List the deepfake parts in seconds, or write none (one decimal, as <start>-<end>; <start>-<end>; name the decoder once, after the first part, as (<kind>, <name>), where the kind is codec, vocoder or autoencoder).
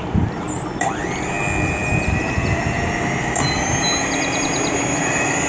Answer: none